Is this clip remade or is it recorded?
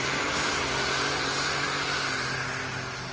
recorded